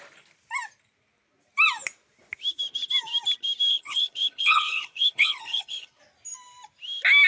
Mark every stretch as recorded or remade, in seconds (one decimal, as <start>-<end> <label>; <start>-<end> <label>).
0.0-3.7 recorded; 3.7-6.0 remade; 6.0-7.3 recorded